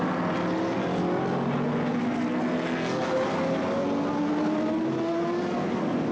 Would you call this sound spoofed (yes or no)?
no